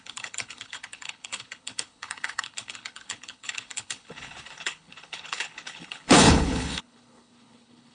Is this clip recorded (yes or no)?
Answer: no